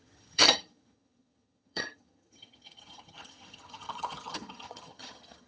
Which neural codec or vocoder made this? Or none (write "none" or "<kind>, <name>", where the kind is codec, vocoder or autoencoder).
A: vocoder, HiFi-GAN